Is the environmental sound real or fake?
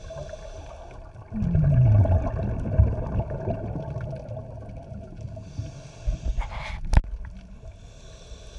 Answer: real